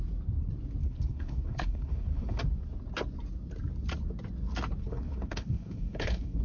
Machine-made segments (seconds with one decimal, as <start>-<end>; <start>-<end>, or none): 0.8-2.4; 4.8-6.4